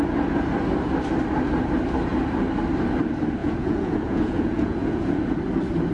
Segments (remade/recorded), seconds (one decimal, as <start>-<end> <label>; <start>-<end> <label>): 0.0-3.4 recorded; 3.4-5.2 remade; 5.2-5.9 recorded